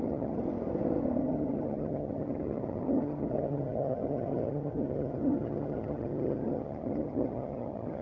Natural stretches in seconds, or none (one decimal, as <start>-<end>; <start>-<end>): 0.4-1.2